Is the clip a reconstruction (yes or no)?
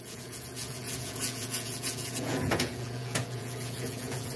yes